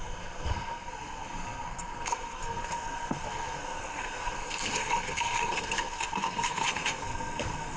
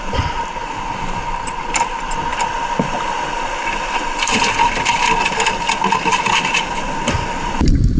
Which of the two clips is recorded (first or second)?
second